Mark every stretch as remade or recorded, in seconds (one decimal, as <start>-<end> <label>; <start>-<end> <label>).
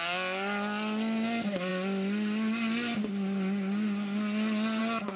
0.0-5.2 recorded